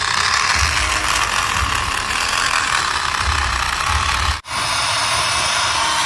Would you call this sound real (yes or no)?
yes